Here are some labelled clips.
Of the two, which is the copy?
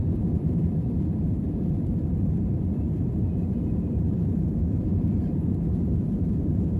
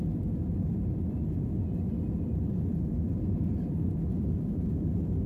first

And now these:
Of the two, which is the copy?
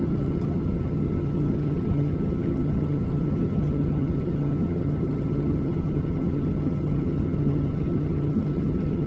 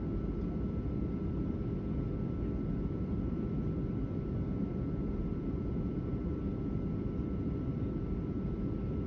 first